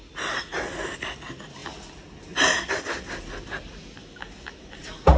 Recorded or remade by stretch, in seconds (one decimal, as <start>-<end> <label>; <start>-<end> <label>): 0.0-4.0 recorded; 4.0-4.8 remade; 4.8-5.2 recorded